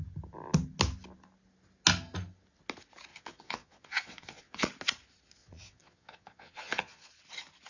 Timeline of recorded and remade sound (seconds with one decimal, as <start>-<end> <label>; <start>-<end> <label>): 0.0-3.1 recorded; 3.1-4.7 remade; 4.7-5.4 recorded; 5.4-7.1 remade; 7.1-7.7 recorded